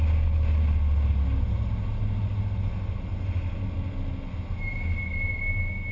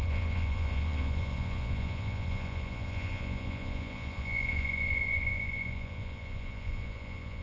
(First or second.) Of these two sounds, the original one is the first